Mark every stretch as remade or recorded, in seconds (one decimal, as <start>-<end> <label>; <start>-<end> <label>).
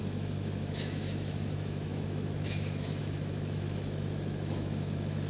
0.0-5.3 remade